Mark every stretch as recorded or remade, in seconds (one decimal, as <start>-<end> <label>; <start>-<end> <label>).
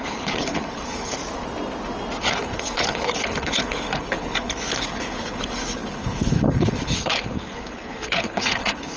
0.0-1.2 remade; 1.2-2.2 recorded; 2.2-9.0 remade